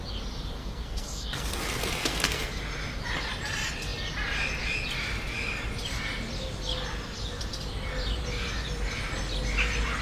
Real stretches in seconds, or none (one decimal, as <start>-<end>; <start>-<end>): 0.0-0.6; 1.6-2.0; 2.6-10.0